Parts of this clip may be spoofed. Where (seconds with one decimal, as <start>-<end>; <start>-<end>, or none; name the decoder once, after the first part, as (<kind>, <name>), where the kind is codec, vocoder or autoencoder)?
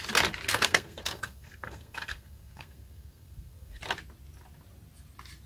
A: 0.5-3.8 (codec, SNAC)